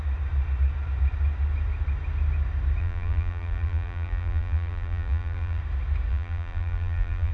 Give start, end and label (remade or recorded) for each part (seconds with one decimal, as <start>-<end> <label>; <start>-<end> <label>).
0.0-2.8 recorded; 2.8-5.6 remade; 5.6-6.1 recorded; 6.1-7.3 remade